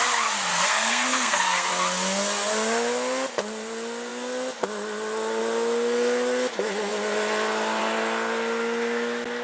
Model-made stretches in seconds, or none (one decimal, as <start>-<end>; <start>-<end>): 0.5-1.7